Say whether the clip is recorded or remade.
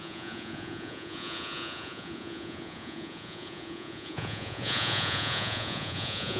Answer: remade